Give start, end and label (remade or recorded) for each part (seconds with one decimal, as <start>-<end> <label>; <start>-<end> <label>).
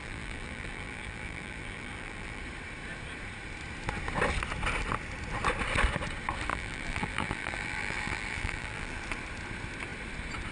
0.0-2.4 remade; 2.4-6.5 recorded; 6.5-9.0 remade; 9.0-10.5 recorded